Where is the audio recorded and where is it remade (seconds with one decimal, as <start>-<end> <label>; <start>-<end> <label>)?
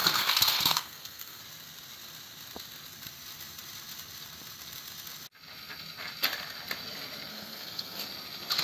0.0-1.4 remade; 1.4-7.3 recorded; 7.3-8.0 remade; 8.0-8.6 recorded